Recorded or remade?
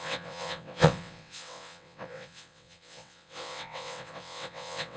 remade